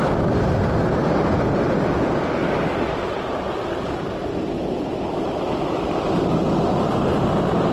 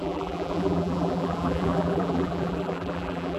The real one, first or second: first